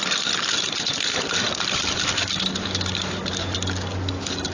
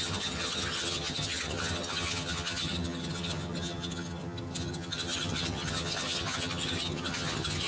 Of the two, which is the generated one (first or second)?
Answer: second